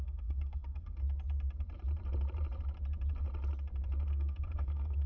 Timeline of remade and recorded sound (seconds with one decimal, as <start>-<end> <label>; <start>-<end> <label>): 0.0-1.0 remade; 1.0-4.1 recorded; 4.1-5.1 remade